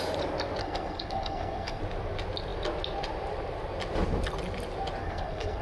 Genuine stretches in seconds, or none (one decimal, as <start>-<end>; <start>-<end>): 0.0-0.6; 1.8-5.0